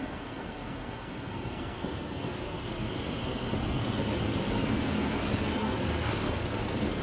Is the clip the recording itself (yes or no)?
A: no